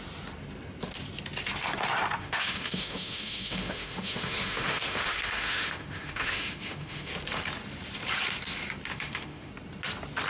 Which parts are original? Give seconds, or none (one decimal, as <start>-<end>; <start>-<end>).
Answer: 0.0-2.2; 7.1-8.9; 9.5-10.3